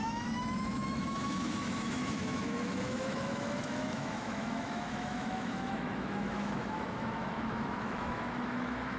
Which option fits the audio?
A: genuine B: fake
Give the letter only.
B